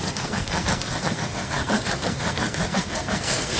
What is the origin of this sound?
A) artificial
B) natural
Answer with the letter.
A